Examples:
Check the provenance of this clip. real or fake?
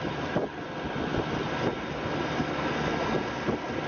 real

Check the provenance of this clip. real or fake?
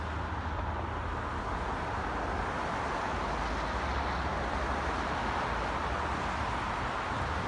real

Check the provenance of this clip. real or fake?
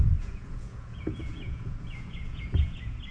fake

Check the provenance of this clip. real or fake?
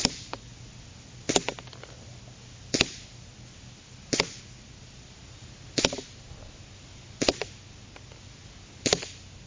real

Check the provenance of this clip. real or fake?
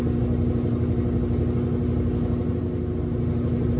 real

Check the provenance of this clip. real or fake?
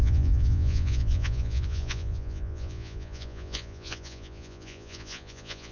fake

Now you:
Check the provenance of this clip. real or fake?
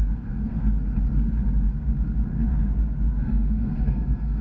fake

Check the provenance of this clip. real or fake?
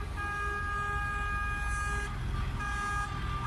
real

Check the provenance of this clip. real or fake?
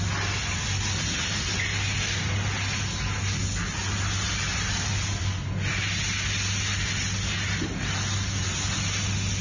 real